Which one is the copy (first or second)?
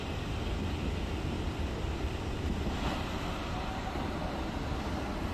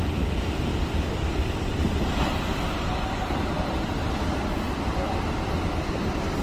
second